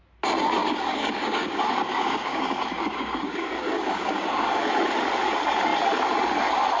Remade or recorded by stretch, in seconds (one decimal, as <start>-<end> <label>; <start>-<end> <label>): 0.0-0.6 recorded; 0.6-4.7 remade; 4.7-6.8 recorded

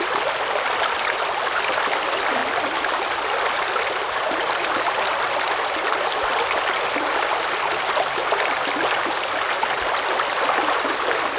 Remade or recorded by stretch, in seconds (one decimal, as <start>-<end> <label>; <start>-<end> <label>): 0.0-11.4 recorded

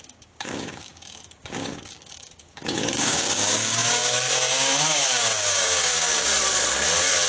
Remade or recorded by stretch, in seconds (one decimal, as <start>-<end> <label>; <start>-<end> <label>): 0.0-6.3 remade; 6.3-7.3 recorded

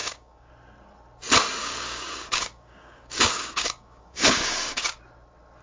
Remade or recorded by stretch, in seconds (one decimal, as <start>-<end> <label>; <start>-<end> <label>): 0.0-0.5 remade; 0.5-1.6 recorded; 1.6-5.0 remade; 5.0-5.6 recorded

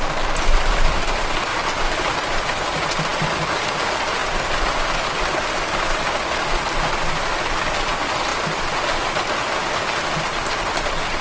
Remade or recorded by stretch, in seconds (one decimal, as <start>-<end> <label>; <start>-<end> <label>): 0.0-11.2 recorded